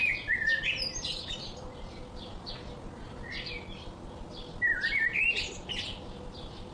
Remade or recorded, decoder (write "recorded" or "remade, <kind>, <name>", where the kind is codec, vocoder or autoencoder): recorded